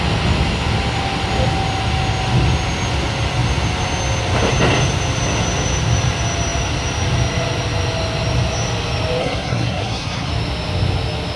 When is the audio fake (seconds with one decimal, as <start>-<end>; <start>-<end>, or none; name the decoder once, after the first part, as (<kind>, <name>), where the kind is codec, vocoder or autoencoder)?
9.2-10.3 (codec, SNAC)